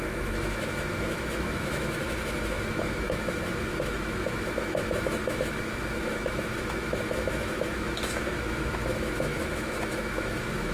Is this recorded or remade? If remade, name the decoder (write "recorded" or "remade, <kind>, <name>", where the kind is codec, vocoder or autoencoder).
remade, autoencoder, DAC-VAE